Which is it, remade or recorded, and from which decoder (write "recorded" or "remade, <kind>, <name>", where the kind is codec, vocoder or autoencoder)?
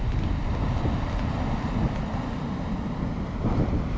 recorded